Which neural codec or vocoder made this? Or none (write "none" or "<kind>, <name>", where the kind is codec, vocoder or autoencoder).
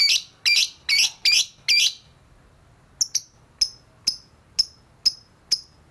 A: none